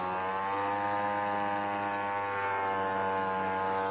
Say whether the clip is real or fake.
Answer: real